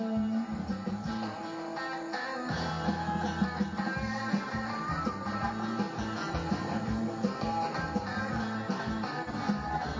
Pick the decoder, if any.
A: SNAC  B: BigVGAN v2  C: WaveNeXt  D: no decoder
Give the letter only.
B